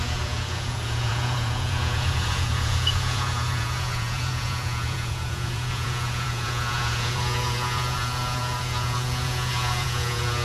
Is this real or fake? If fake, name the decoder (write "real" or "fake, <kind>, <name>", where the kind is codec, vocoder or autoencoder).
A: fake, vocoder, Vocos